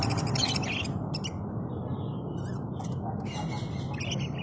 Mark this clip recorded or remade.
recorded